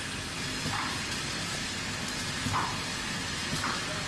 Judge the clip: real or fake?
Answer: real